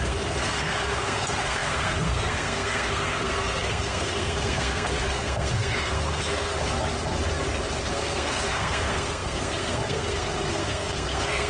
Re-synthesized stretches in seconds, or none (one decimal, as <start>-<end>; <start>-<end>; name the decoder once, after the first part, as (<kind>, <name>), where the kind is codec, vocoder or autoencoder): 0.0-6.5 (codec, SNAC); 7.9-11.5